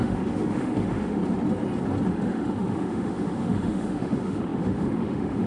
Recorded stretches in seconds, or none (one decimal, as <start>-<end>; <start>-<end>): 1.2-2.1